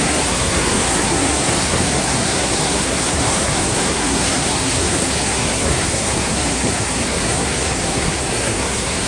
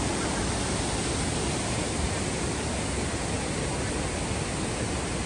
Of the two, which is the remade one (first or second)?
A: first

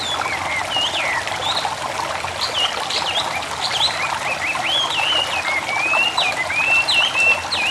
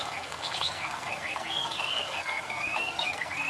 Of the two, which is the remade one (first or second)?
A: second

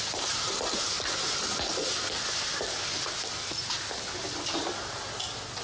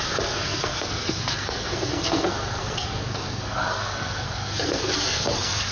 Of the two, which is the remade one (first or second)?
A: second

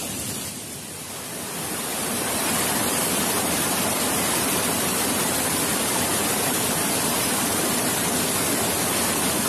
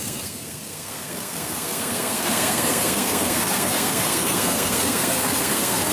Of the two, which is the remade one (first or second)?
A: second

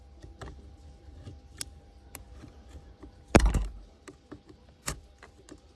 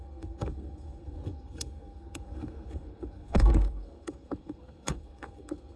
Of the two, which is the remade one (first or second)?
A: second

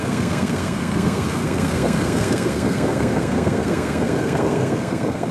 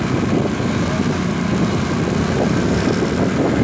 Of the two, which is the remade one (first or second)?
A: first